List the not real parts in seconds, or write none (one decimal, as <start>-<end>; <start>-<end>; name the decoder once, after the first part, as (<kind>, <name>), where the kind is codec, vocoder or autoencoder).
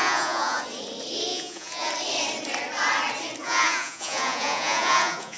0.0-0.6 (vocoder, Vocos); 1.3-1.9; 3.4-5.4